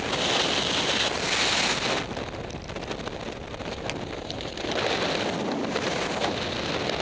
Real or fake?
real